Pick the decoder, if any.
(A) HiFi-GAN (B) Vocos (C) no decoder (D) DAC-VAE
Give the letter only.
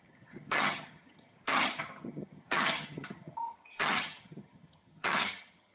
A